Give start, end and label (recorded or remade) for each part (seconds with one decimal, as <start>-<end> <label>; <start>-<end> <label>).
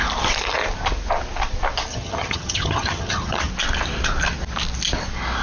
0.0-1.9 recorded; 1.9-3.5 remade; 3.5-5.4 recorded